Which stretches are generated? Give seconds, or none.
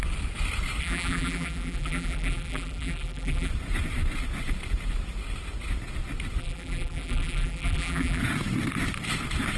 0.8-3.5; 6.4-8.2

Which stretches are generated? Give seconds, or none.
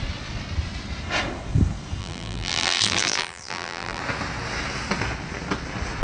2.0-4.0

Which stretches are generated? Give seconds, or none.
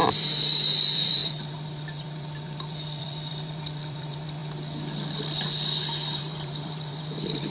0.0-4.4; 6.2-7.5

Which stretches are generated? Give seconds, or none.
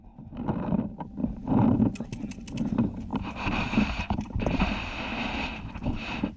1.2-1.8; 3.1-4.7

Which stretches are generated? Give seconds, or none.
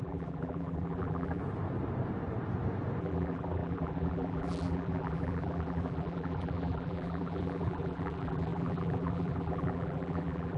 0.0-1.4; 3.0-10.6